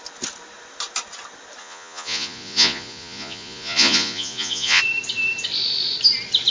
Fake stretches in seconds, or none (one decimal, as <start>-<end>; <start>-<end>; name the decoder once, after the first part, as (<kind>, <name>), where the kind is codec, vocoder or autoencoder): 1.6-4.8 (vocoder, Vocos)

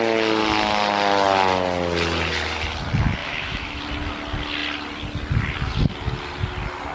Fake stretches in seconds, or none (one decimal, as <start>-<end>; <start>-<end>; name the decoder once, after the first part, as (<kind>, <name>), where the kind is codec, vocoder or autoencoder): 3.2-3.8 (autoencoder, DAC-VAE)

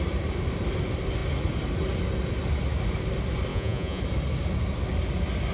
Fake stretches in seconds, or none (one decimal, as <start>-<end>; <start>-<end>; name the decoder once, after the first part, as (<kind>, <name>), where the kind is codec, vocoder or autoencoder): 3.5-4.0 (vocoder, Vocos)

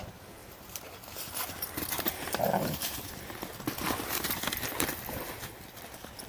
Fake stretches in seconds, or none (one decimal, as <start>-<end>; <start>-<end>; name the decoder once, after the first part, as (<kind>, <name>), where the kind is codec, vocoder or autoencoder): 0.4-3.0 (vocoder, BigVGAN v2)